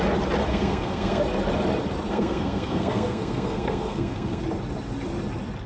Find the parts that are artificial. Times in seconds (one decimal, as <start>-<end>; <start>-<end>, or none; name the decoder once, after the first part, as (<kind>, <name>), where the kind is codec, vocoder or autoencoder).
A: 0.5-1.2 (codec, SNAC); 2.1-4.4